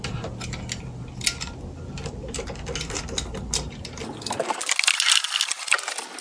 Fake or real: real